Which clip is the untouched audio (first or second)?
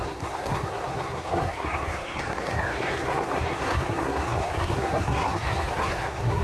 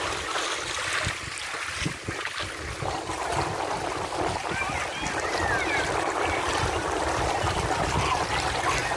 second